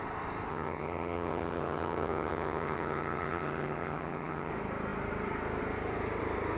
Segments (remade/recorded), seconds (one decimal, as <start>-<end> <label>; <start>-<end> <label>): 0.0-0.5 recorded; 0.5-4.5 remade; 4.5-6.6 recorded